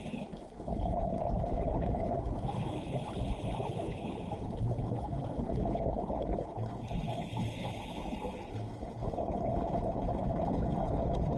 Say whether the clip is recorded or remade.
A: remade